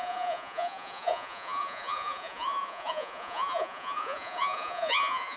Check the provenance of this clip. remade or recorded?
remade